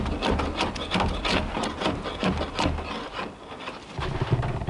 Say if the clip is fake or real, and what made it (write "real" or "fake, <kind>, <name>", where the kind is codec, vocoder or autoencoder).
real